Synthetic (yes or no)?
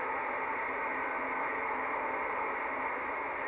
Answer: no